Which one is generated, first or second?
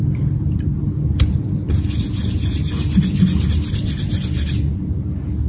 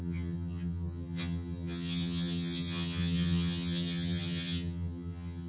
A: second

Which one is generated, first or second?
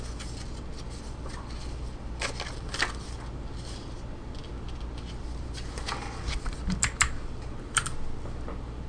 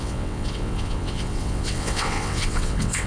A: second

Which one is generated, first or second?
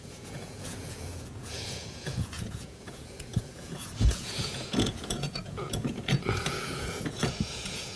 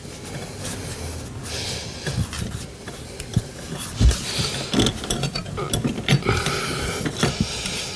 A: first